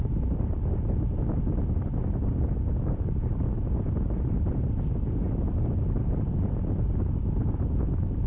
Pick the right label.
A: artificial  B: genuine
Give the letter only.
B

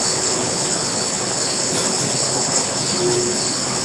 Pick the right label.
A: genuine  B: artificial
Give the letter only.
B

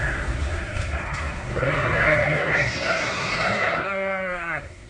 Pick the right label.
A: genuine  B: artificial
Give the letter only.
B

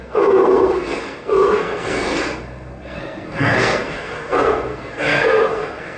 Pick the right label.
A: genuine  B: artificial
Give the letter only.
B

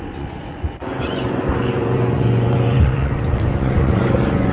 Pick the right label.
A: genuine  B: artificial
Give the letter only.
B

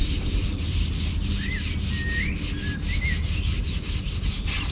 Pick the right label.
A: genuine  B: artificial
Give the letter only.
A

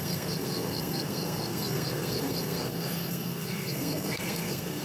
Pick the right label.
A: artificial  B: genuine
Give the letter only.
A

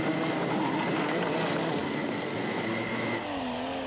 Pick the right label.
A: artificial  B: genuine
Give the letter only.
B